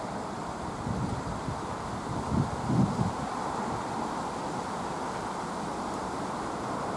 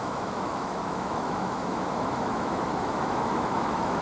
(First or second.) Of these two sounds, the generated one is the second